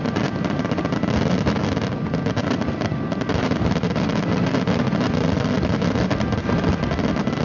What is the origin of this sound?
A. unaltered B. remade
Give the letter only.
A